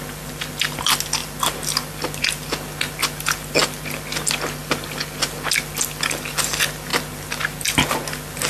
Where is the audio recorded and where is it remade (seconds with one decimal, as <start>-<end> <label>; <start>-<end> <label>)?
0.0-8.5 recorded